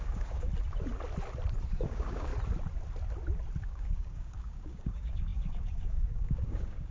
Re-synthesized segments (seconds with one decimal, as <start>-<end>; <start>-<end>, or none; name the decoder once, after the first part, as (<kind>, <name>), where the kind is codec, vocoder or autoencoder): 0.0-0.5 (codec, DAC); 1.7-2.3; 3.6-6.9